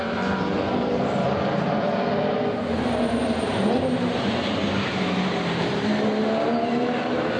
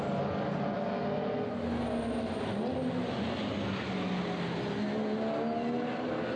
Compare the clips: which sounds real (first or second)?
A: second